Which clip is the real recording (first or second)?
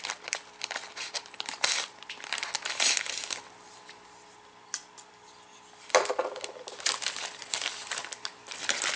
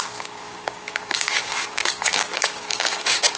first